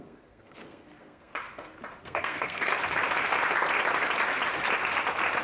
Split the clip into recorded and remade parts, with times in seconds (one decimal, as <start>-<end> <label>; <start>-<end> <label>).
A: 0.0-1.3 remade; 1.3-2.0 recorded; 2.0-2.7 remade; 2.7-5.4 recorded